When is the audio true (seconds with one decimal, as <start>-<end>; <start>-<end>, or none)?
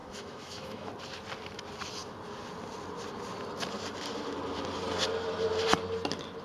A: 0.9-6.4